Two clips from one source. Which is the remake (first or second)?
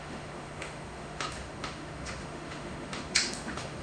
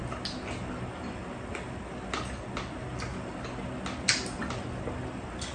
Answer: first